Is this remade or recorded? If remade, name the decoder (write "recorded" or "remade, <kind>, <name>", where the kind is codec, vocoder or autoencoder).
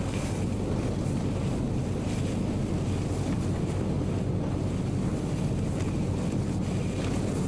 recorded